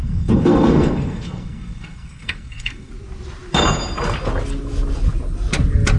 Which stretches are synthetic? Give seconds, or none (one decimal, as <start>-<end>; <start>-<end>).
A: 0.0-2.9

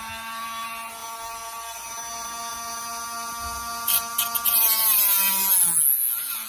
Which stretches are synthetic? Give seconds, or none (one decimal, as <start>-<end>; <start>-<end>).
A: none

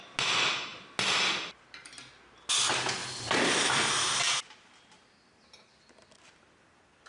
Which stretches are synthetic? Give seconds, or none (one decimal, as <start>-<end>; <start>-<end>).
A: none

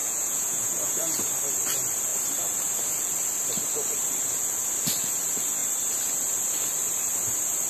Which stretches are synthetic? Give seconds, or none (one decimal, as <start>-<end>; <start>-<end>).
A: 0.0-1.3

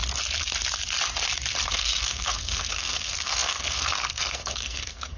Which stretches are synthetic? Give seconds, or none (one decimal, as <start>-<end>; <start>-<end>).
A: 1.7-5.2